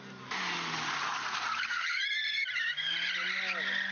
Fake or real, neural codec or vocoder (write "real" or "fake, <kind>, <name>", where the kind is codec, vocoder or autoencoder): real